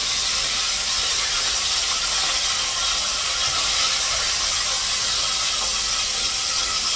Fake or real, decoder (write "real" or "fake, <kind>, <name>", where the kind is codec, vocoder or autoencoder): real